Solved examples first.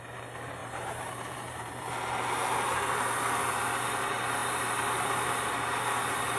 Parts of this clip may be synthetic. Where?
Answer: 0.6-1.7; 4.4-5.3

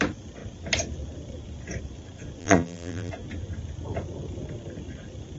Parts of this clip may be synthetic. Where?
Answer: 2.4-3.1

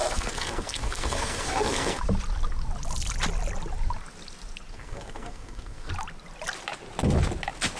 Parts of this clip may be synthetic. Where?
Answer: 0.0-2.0; 4.7-5.9

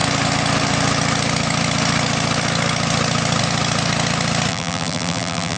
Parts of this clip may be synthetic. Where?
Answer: 4.5-5.6

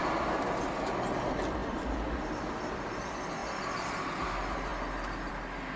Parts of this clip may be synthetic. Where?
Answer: none